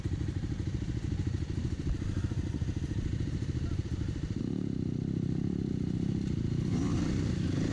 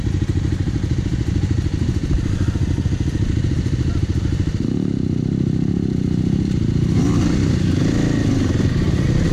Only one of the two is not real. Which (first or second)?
first